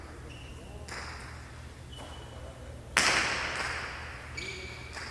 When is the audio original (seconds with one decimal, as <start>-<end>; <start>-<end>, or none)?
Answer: 0.0-5.1